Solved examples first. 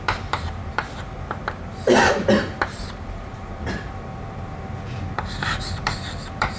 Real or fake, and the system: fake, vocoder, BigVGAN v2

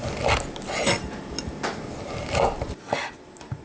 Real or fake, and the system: real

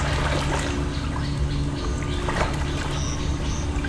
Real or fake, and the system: real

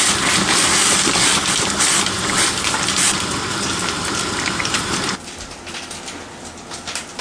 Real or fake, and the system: fake, vocoder, BigVGAN v2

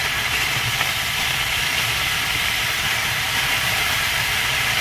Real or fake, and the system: fake, vocoder, BigVGAN v2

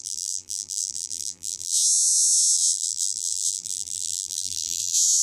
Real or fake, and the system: fake, vocoder, BigVGAN v2